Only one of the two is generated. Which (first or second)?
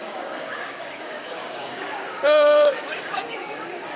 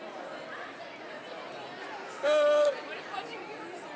first